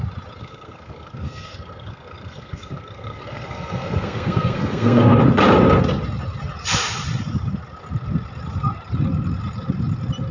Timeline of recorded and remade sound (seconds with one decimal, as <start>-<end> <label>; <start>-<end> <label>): 0.0-0.4 recorded; 0.4-5.2 remade; 5.2-10.3 recorded